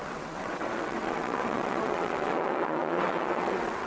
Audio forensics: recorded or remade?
remade